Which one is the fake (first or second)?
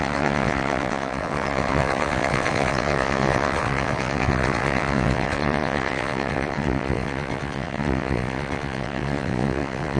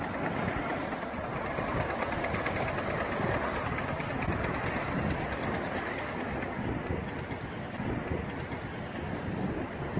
first